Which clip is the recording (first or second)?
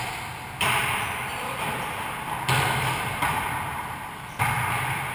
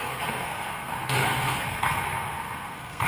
first